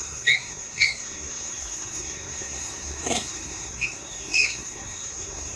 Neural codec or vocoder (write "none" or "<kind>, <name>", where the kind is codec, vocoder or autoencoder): codec, SNAC